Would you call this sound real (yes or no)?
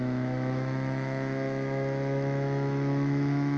no